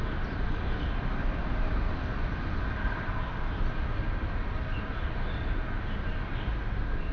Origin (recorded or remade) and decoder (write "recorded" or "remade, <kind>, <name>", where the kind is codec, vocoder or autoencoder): recorded